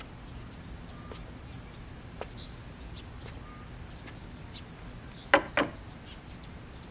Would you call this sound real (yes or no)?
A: yes